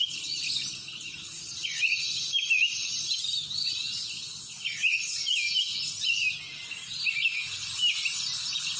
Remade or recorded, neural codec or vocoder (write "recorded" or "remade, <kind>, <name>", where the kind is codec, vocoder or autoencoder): recorded